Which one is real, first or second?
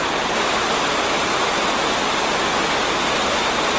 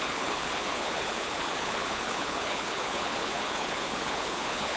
first